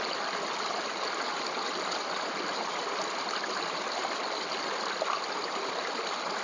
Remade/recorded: recorded